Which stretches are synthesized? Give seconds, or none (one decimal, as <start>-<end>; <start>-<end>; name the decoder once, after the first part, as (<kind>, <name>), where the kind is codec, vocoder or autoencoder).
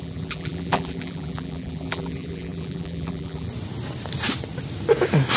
0.0-3.5 (vocoder, BigVGAN v2)